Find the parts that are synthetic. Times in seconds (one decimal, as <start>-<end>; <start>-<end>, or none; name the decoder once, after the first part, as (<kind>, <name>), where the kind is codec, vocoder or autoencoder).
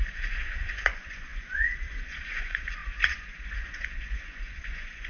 0.0-5.1 (vocoder, Vocos)